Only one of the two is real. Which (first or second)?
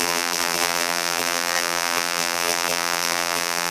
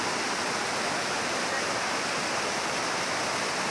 second